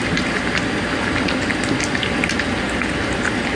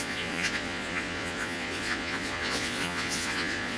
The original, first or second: first